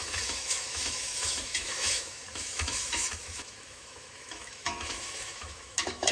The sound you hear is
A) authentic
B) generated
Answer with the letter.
B